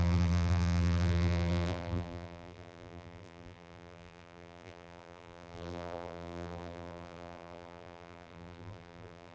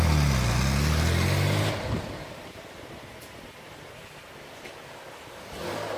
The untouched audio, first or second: second